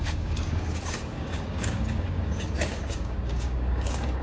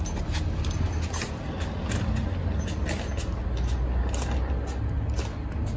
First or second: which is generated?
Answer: first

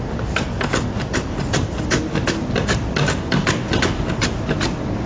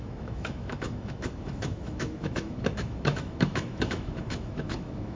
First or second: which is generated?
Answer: second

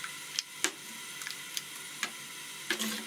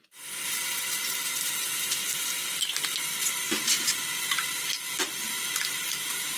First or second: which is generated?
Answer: second